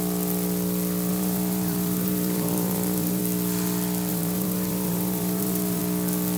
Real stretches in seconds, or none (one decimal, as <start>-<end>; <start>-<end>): 0.0-1.1; 3.2-4.1; 5.8-6.4